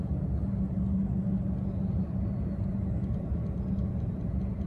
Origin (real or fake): real